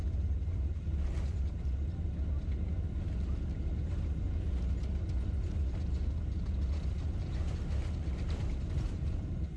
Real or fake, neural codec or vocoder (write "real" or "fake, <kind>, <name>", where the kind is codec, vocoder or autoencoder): real